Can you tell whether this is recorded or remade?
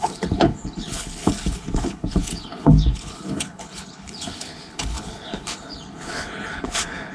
remade